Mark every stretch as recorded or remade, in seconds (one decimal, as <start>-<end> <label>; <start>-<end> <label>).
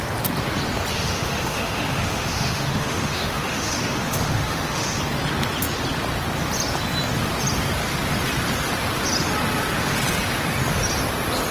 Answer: 0.0-0.9 recorded; 0.9-5.0 remade; 5.0-11.5 recorded